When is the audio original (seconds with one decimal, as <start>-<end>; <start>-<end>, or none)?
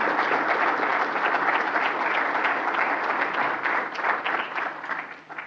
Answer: 0.0-5.5